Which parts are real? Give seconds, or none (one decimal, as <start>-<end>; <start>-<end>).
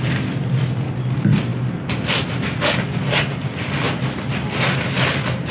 0.0-5.5